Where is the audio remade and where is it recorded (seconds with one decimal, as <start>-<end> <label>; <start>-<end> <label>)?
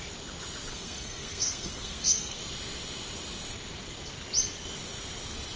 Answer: 0.0-0.7 recorded; 0.7-2.4 remade; 2.4-5.6 recorded